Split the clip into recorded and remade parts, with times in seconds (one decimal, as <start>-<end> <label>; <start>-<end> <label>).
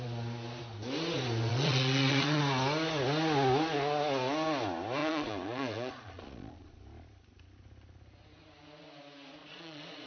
0.0-1.5 recorded; 1.5-2.4 remade; 2.4-5.0 recorded; 5.0-6.8 remade; 6.8-9.4 recorded; 9.4-10.1 remade